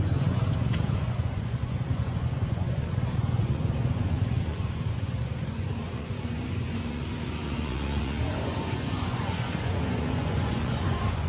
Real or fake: fake